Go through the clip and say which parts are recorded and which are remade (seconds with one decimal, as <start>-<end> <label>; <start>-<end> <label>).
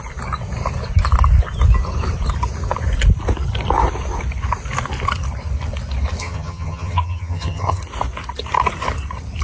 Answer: 0.0-6.2 recorded; 6.2-7.8 remade; 7.8-9.4 recorded